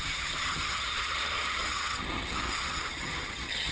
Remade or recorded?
remade